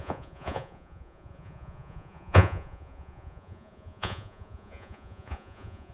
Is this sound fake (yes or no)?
yes